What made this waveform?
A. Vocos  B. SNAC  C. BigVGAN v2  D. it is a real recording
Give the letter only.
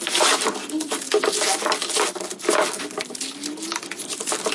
D